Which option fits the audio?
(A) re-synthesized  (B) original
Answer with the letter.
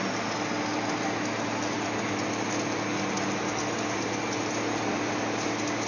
B